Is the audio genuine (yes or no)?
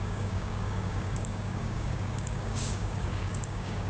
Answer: no